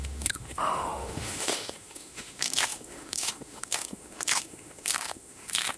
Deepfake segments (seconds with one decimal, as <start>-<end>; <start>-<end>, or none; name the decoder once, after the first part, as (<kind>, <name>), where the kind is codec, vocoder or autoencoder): 0.0-5.8 (autoencoder, DAC-VAE)